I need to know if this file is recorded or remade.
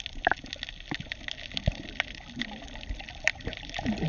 recorded